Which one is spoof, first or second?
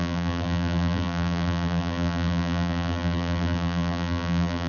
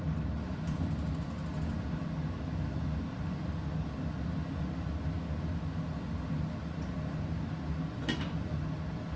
first